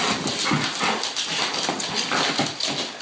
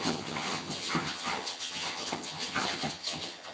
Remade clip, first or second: second